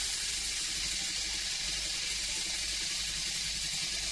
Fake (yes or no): no